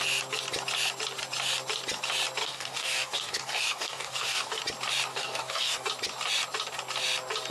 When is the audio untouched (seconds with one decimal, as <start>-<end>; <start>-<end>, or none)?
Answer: 0.0-2.4; 4.6-5.1; 5.9-7.5